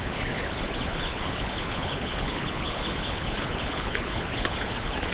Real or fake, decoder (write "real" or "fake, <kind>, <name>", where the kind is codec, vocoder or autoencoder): fake, codec, HILCodec